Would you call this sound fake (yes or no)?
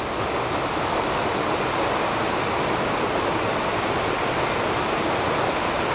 no